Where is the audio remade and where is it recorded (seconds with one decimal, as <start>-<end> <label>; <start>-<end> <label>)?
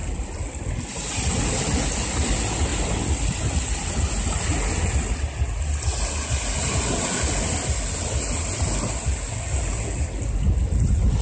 0.0-11.2 recorded